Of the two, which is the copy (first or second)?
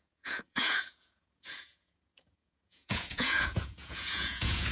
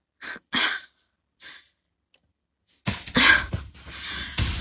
first